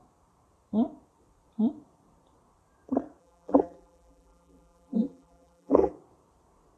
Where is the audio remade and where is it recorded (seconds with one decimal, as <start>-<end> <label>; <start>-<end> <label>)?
0.0-3.2 recorded; 3.2-5.9 remade; 5.9-6.8 recorded